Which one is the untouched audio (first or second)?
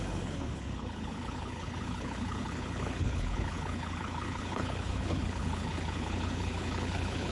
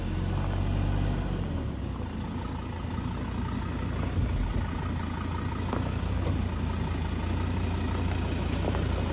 second